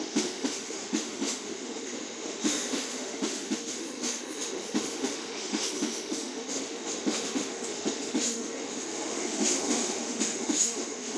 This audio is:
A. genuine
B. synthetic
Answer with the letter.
B